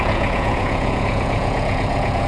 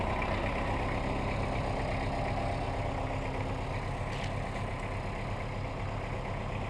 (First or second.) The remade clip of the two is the first